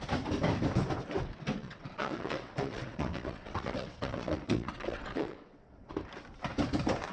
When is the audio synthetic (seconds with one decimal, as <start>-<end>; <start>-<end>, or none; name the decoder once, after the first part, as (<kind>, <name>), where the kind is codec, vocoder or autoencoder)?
1.6-5.9 (vocoder, WaveNeXt)